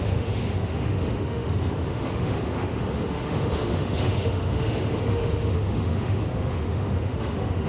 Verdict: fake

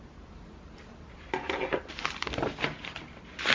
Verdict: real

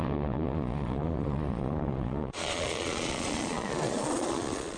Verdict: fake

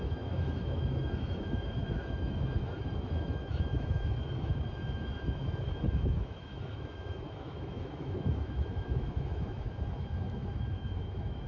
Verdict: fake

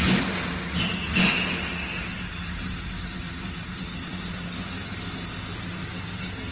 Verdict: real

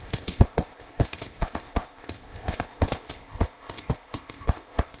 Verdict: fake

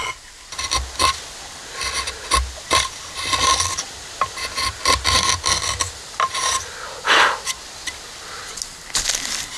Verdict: real